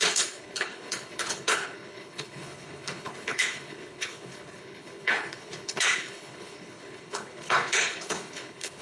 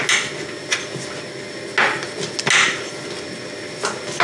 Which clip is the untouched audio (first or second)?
second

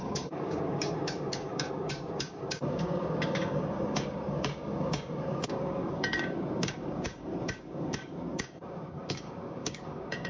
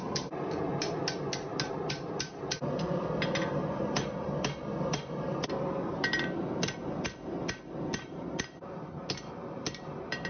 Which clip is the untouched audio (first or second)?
second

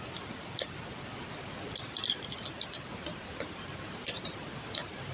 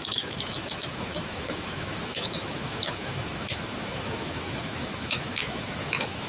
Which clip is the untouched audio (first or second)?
first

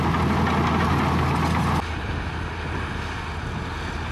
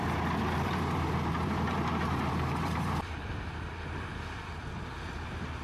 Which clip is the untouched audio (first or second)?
first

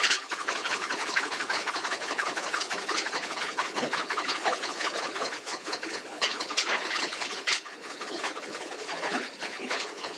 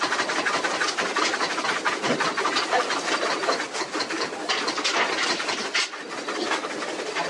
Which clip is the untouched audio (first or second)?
second